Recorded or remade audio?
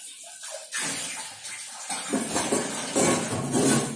recorded